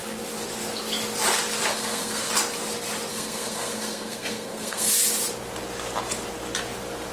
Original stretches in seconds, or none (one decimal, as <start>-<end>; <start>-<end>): 0.0-1.7; 2.3-3.1; 4.9-7.1